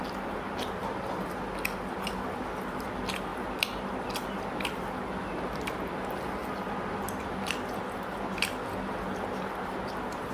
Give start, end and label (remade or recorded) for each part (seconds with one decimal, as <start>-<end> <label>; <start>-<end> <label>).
0.0-10.3 recorded